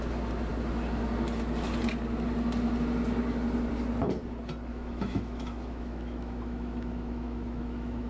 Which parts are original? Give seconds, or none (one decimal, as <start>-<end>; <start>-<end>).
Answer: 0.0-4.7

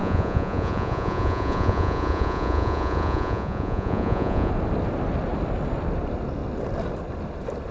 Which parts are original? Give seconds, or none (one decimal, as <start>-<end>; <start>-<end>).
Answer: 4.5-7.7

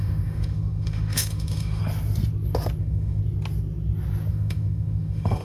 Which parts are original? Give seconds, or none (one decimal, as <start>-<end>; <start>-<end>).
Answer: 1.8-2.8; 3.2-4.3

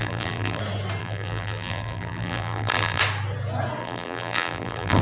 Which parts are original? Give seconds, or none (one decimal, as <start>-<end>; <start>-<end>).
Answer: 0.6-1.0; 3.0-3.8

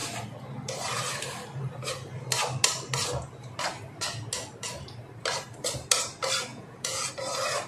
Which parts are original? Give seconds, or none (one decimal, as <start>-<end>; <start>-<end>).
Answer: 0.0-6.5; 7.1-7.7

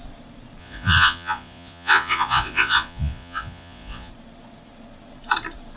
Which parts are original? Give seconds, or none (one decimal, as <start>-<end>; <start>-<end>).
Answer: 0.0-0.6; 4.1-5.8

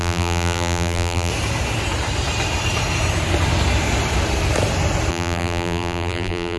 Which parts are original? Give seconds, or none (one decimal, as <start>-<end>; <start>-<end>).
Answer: 1.3-5.1